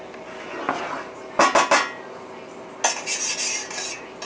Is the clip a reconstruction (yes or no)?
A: no